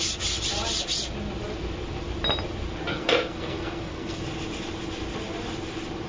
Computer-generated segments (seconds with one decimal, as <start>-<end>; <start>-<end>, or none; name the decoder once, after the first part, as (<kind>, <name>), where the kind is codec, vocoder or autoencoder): 2.9-4.2 (codec, SNAC)